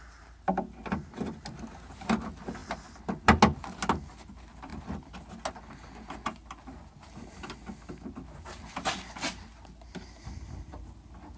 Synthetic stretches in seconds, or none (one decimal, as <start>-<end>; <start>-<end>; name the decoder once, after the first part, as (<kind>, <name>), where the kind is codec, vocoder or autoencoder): none